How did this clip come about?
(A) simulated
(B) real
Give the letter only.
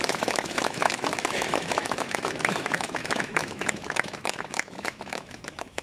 A